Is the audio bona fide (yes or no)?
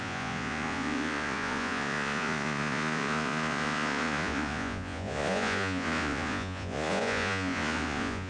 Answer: no